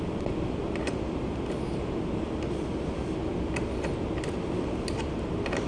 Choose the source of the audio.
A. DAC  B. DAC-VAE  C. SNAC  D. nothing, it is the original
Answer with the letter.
D